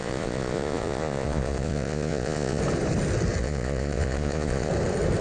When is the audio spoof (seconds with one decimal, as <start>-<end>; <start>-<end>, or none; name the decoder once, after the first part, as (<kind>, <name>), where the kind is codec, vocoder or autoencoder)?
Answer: 0.0-2.6 (vocoder, Vocos); 3.4-4.7